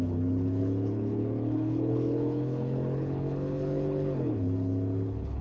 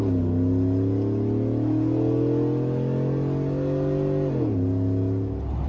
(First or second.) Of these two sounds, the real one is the second